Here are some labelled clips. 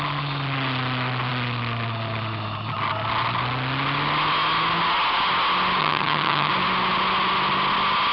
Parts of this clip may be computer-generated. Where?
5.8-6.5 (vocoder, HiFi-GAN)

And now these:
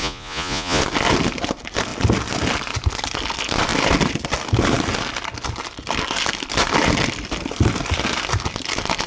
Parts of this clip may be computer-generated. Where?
0.0-0.8 (vocoder, Vocos)

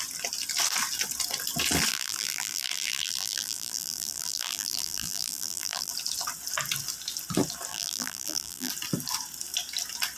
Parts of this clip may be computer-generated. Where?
1.9-5.9 (vocoder, BigVGAN v2); 7.7-8.7

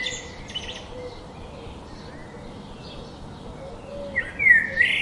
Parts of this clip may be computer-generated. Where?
none

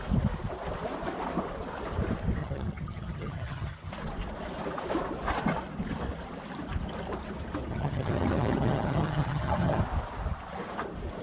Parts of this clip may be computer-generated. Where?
2.4-3.9 (vocoder, HiFi-GAN); 7.7-9.8